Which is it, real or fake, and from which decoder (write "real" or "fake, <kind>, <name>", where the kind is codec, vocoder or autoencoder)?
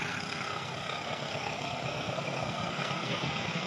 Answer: fake, codec, SNAC